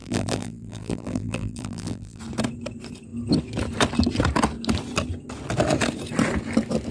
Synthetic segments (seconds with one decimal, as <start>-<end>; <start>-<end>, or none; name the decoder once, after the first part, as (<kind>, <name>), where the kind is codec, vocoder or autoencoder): 0.0-2.2 (vocoder, BigVGAN v2)